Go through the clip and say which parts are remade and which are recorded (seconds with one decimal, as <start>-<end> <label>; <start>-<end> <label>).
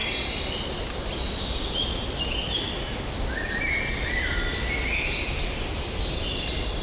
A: 0.0-3.9 recorded; 3.9-4.5 remade; 4.5-5.0 recorded; 5.0-6.8 remade